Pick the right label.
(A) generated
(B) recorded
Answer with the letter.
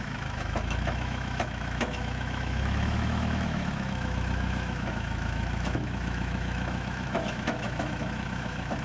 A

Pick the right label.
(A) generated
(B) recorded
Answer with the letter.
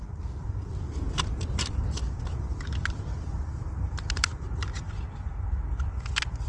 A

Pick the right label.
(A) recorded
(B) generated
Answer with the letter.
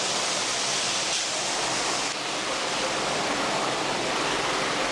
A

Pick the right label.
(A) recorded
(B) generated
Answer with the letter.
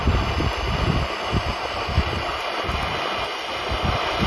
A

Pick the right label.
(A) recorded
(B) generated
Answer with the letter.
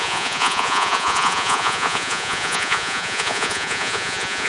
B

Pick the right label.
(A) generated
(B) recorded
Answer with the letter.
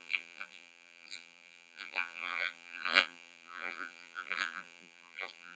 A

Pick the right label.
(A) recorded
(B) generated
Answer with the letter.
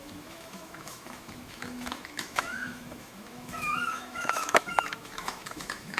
B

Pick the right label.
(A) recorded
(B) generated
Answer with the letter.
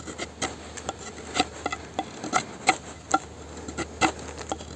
A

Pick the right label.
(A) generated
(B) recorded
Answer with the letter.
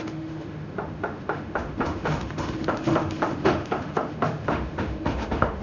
A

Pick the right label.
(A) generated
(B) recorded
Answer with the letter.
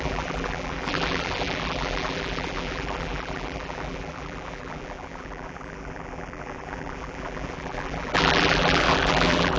A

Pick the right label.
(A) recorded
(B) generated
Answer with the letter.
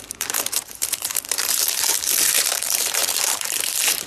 B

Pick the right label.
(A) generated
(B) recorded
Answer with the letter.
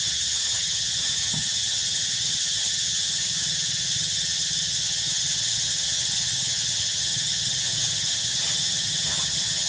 A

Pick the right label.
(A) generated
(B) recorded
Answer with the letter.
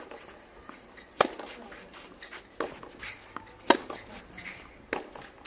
B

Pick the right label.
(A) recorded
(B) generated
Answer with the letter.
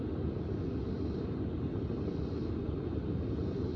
A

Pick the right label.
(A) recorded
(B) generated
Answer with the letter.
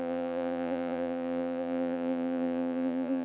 B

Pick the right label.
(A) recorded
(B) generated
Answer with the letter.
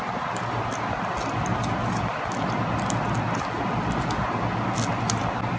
A